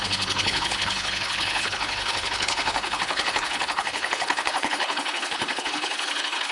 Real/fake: fake